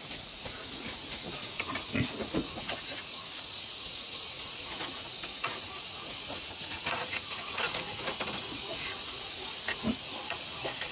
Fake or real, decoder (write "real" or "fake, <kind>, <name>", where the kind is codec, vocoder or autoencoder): fake, vocoder, Vocos